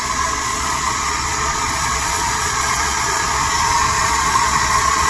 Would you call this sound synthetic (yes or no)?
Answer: yes